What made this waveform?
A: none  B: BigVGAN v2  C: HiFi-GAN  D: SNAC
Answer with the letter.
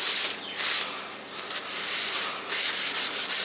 A